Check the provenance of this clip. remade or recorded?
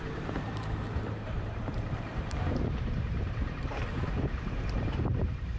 remade